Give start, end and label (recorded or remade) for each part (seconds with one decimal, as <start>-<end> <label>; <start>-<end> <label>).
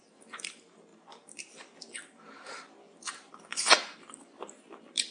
0.0-5.1 remade